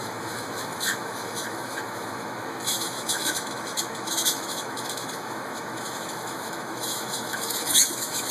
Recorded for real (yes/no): no